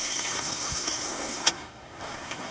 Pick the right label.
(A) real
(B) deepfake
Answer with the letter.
B